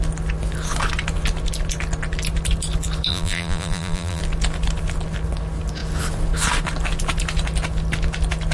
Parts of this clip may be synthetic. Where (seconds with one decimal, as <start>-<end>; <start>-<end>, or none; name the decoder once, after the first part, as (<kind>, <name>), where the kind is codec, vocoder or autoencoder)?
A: 3.1-4.2 (vocoder, BigVGAN v2)